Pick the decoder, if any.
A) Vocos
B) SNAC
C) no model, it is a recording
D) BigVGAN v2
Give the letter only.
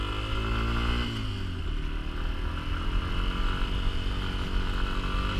C